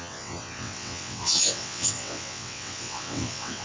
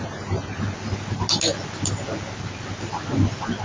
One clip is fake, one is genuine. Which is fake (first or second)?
first